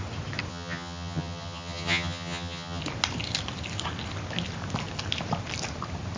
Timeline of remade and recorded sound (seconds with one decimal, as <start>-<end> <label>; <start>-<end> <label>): 0.0-0.5 recorded; 0.5-2.8 remade; 2.8-6.2 recorded